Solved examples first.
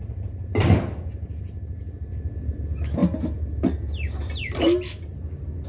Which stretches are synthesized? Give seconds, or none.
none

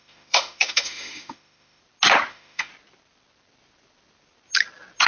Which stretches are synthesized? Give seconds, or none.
0.0-1.8 (autoencoder, DAC-VAE); 2.3-2.7

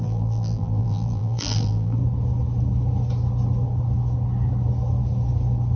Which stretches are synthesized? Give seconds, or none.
0.0-2.0 (vocoder, BigVGAN v2)